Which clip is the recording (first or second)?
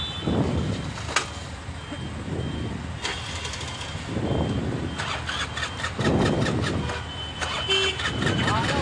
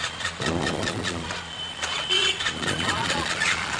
first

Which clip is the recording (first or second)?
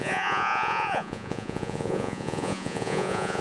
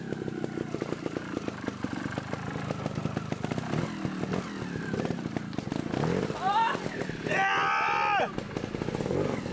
second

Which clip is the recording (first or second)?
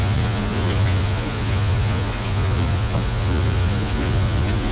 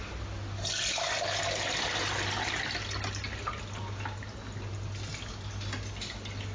second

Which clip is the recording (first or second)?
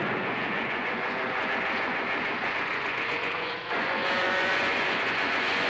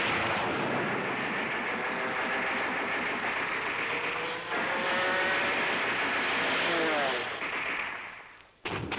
second